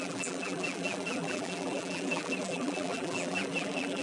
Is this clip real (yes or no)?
no